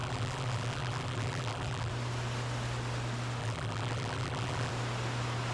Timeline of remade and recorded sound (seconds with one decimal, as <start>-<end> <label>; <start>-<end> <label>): 0.0-1.9 remade; 1.9-3.4 recorded; 3.4-4.7 remade; 4.7-5.5 recorded